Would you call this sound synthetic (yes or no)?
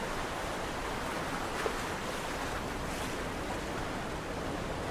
no